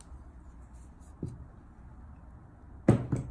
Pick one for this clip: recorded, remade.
recorded